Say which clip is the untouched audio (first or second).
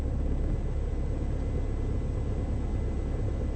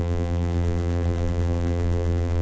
first